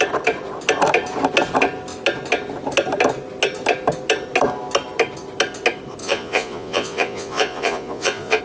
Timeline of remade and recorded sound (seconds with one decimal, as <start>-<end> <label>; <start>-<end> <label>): 0.0-6.0 recorded; 6.0-8.4 remade